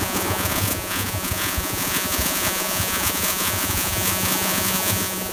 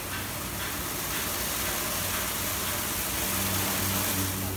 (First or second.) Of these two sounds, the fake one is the first